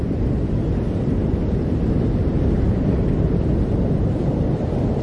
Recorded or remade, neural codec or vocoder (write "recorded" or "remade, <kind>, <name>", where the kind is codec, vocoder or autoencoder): recorded